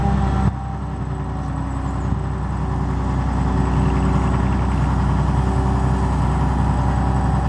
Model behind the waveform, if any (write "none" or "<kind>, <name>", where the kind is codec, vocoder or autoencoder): none